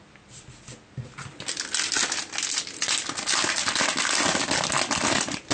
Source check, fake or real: real